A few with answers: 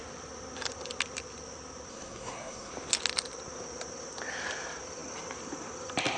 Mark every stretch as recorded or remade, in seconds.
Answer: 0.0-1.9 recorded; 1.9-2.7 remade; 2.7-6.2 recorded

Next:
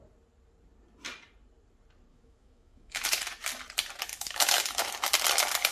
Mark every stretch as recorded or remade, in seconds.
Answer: 0.0-2.1 recorded; 2.1-3.2 remade; 3.2-4.1 recorded; 4.1-4.8 remade; 4.8-5.7 recorded

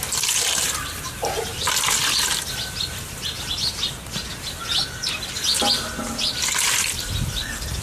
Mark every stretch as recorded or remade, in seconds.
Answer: 0.0-7.8 recorded